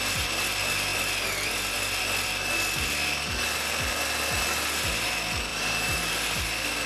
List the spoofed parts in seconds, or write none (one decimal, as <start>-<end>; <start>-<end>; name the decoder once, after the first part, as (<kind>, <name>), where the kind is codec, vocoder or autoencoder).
5.5-6.0 (vocoder, BigVGAN v2)